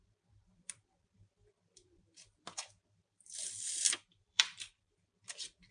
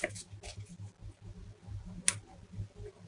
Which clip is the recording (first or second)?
second